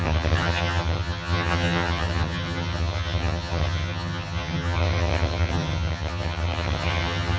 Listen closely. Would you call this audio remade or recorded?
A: remade